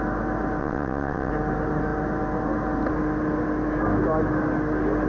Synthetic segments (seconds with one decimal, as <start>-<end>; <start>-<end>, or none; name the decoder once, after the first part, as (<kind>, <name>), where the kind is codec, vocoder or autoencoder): 0.6-1.3 (vocoder, WaveNeXt)